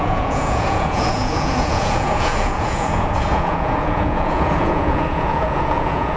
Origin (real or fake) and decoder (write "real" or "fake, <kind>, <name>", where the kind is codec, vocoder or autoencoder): fake, vocoder, Vocos